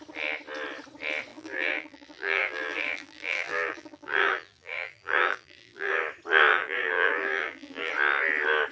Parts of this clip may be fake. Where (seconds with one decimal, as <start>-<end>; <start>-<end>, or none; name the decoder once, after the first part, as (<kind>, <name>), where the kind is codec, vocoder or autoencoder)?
1.3-5.9 (vocoder, BigVGAN v2); 6.5-7.9